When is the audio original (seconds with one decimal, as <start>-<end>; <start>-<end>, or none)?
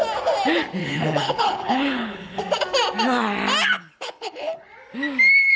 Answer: 0.0-0.8; 2.4-3.7; 4.7-5.6